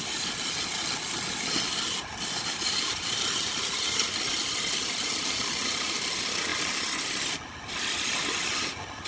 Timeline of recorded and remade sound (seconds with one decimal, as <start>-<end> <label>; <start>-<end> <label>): 0.0-9.1 recorded